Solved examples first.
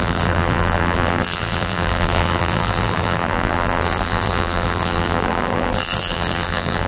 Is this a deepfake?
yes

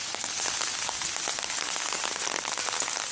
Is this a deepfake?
no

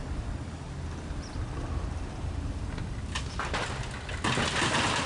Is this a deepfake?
no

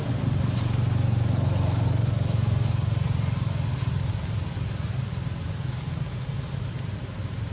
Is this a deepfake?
no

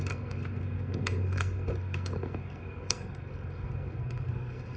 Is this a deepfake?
yes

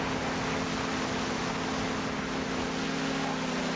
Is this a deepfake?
no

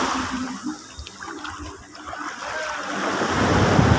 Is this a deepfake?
no